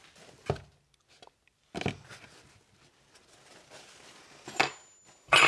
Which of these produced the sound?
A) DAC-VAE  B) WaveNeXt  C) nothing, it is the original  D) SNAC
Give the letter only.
C